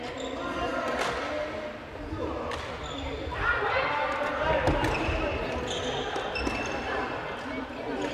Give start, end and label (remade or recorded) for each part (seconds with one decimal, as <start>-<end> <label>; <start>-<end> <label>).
0.0-8.1 recorded